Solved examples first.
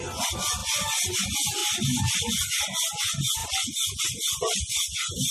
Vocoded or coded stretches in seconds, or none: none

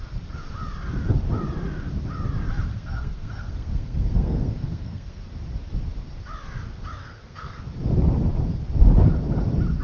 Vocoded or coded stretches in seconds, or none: 2.7-5.2 (codec, SNAC); 7.0-7.6

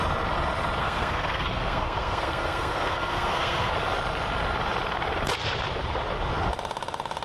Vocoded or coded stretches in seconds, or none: 0.8-3.7 (codec, SNAC)

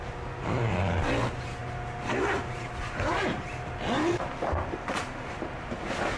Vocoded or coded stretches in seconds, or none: none